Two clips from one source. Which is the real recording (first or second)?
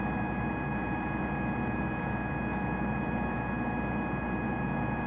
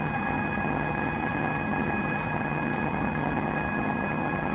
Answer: first